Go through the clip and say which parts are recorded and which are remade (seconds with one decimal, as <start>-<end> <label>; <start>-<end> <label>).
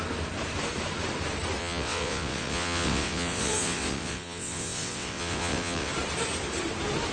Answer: 0.0-1.6 recorded; 1.6-5.9 remade; 5.9-7.1 recorded